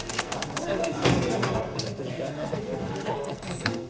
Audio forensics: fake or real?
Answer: fake